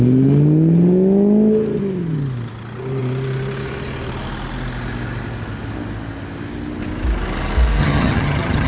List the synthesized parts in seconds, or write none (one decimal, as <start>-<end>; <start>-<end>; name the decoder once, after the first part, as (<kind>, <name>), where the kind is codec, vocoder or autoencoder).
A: 7.8-8.7 (vocoder, HiFi-GAN)